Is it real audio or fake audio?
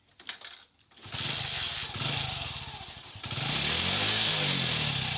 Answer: real